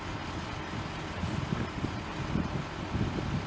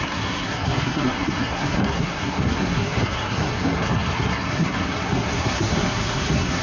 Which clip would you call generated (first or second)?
second